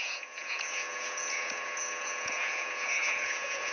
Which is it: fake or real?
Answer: fake